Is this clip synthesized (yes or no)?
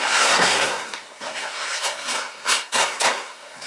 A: yes